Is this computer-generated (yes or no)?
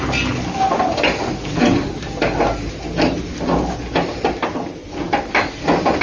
no